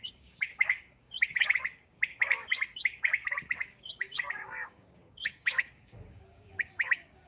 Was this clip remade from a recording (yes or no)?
yes